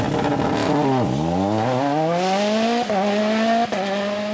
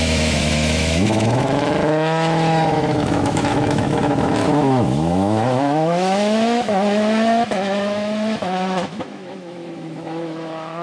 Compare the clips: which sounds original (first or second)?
first